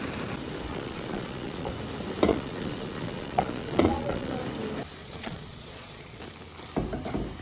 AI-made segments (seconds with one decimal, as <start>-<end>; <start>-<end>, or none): 0.7-1.7; 2.3-4.4; 5.0-6.2